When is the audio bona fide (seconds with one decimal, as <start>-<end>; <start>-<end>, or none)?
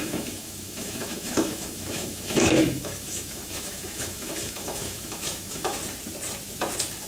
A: 5.8-7.1